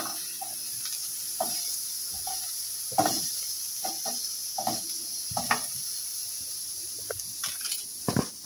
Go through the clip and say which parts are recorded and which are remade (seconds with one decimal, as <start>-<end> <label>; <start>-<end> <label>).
0.0-1.0 recorded; 1.0-3.5 remade; 3.5-4.4 recorded; 4.4-5.8 remade; 5.8-6.2 recorded; 6.2-7.2 remade; 7.2-8.5 recorded